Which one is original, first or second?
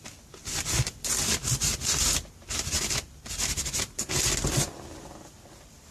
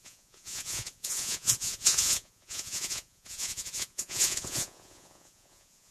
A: first